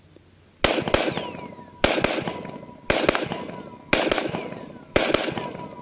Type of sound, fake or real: real